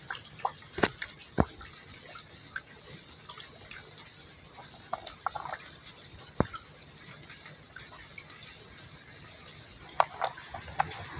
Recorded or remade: recorded